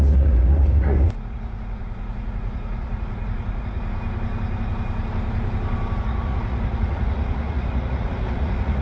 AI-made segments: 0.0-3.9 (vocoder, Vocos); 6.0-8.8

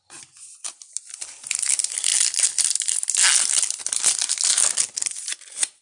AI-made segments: none

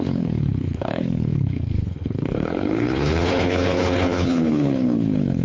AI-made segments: 0.0-5.4 (codec, HILCodec)

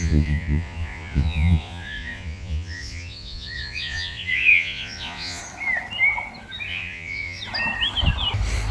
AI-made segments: 0.0-5.4 (vocoder, Vocos); 6.7-7.4